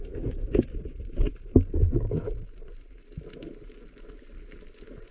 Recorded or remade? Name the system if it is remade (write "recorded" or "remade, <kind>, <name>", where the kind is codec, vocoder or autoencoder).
recorded